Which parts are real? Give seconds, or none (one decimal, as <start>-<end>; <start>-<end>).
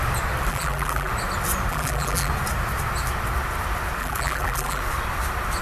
0.0-0.5; 1.1-1.7; 2.3-4.0; 4.8-5.6